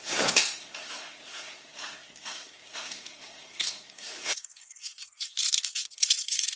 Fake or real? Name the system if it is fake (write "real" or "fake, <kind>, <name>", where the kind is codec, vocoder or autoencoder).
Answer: fake, codec, SNAC